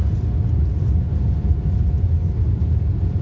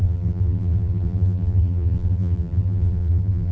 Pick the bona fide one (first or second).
first